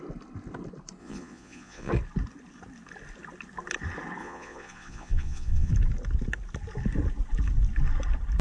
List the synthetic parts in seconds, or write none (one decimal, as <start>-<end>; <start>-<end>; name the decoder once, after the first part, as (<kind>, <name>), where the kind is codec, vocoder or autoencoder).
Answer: 1.0-1.9 (vocoder, Vocos); 4.2-5.7